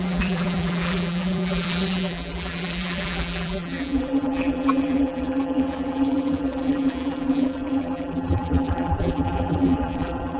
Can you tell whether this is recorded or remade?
remade